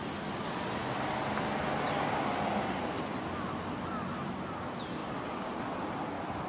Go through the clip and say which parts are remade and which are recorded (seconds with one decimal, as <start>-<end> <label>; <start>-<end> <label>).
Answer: 0.0-6.5 recorded